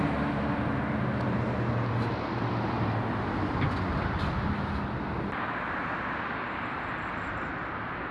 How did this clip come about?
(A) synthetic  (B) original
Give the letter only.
B